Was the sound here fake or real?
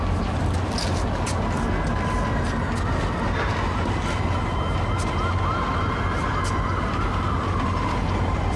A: real